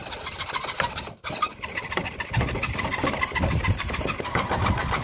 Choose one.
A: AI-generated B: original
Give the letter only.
B